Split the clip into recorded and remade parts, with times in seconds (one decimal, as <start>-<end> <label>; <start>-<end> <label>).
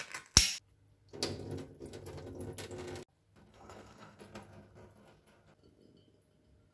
0.0-3.5 recorded; 3.5-4.2 remade; 4.2-6.7 recorded